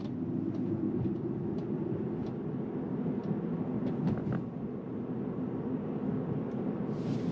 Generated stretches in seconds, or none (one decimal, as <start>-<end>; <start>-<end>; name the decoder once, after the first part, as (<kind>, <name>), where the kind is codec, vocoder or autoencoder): none